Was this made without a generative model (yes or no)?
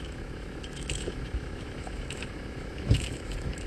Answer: no